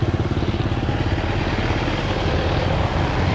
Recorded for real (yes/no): yes